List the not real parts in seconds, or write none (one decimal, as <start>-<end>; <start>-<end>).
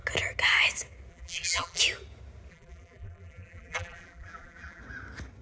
1.1-1.8; 2.5-4.8